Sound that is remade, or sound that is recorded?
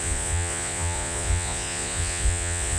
remade